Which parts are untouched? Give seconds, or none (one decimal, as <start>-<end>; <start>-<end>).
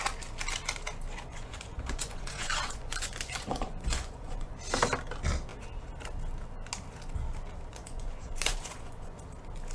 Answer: 0.0-1.3; 4.6-7.7; 9.2-9.7